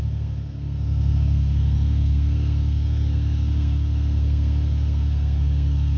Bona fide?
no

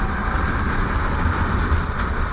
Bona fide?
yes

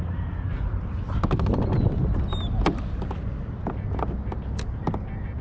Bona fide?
yes